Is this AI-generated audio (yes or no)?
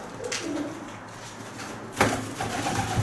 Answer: no